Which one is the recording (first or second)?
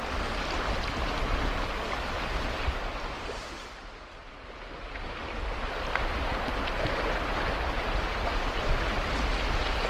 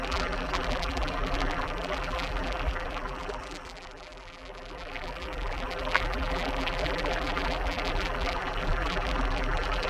first